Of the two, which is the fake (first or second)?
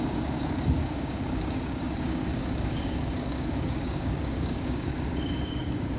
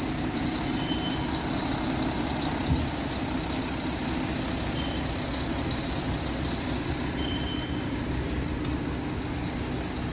first